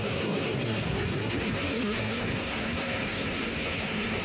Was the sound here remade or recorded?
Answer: remade